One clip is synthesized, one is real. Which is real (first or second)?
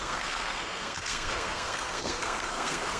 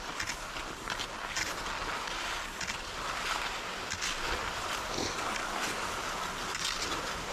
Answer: second